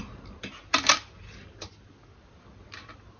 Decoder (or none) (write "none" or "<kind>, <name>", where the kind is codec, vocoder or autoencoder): none